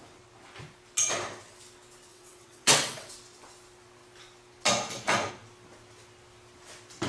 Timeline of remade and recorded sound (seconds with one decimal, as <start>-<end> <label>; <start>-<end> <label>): 0.0-2.1 recorded; 2.1-3.1 remade; 3.1-7.1 recorded